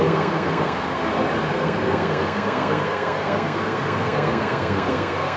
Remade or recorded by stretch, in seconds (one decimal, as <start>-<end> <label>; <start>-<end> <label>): 0.0-1.0 remade; 1.0-1.5 recorded; 1.5-5.4 remade